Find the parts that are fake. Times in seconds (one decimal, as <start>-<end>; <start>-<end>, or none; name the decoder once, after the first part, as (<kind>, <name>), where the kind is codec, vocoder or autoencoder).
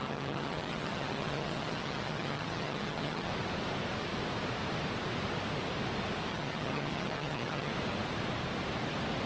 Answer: 0.0-3.3 (vocoder, HiFi-GAN); 6.3-7.7